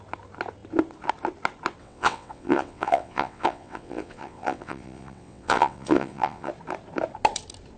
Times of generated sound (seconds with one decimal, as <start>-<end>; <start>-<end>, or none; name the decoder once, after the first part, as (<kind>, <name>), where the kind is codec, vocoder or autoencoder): 1.8-6.5 (vocoder, WaveNeXt)